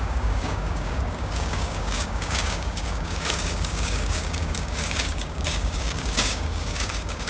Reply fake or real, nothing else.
fake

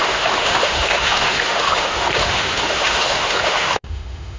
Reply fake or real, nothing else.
fake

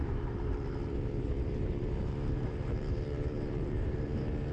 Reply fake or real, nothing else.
fake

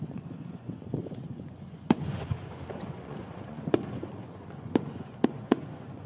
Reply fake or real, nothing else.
fake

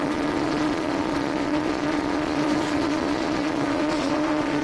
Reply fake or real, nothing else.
fake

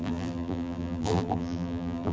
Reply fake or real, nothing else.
fake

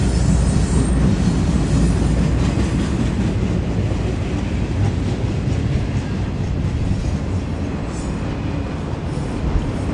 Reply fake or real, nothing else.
real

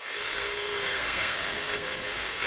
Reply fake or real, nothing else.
fake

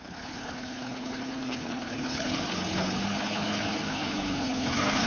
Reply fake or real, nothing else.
fake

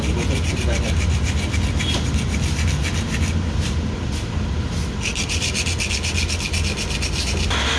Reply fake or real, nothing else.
real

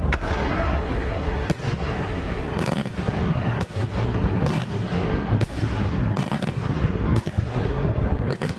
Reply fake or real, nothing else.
fake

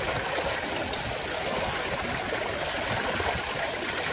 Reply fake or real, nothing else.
real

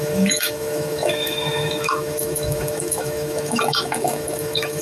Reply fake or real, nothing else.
fake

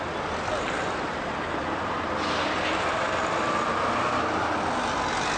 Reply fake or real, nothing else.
real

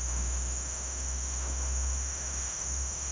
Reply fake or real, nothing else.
fake